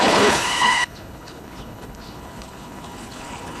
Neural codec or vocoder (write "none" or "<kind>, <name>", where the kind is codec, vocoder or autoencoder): codec, HILCodec